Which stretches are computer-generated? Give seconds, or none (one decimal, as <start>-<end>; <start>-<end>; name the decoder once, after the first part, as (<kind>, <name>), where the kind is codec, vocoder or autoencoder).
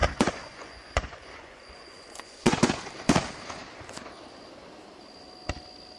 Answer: 0.0-2.9 (vocoder, Vocos)